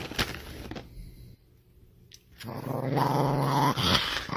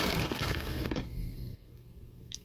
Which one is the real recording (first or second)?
first